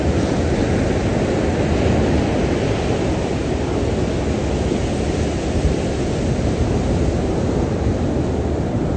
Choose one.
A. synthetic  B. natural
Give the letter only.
B